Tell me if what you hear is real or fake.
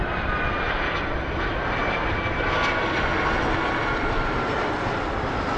real